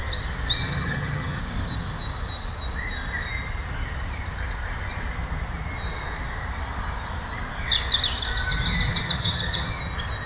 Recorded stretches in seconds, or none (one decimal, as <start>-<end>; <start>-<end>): 0.0-0.6; 1.4-8.9; 9.7-10.3